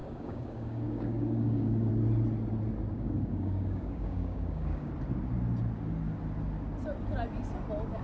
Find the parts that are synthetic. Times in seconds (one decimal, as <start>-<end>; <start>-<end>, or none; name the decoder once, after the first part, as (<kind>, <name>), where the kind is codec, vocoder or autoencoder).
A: 0.0-1.9 (codec, DAC); 2.9-4.9